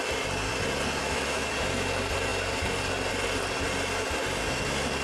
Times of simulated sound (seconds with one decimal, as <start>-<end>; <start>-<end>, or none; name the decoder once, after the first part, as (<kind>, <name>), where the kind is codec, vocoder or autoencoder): 1.0-1.5 (autoencoder, DAC-VAE)